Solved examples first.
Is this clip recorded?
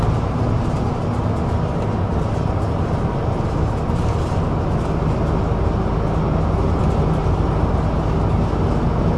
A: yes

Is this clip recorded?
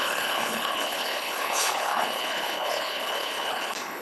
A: no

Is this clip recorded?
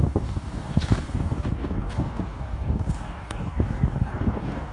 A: no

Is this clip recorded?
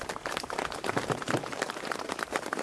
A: no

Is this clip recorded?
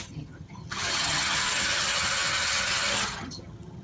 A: no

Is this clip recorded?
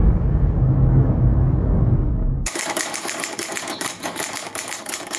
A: no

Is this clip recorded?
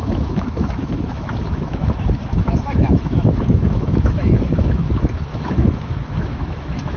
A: no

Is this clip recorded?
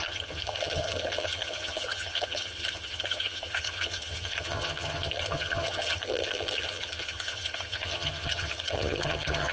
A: no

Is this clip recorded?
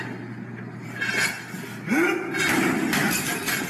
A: yes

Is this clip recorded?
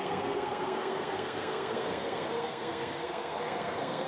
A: no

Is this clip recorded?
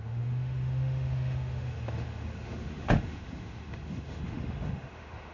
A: no